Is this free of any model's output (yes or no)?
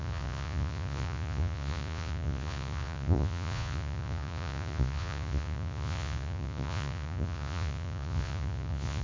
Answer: no